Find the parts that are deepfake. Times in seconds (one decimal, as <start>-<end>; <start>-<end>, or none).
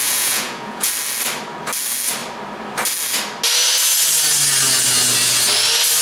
0.0-0.9